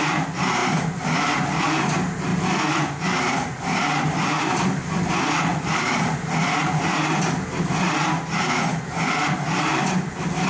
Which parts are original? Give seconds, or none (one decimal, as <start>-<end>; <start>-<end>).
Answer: 0.0-2.3; 5.1-5.5; 6.5-10.5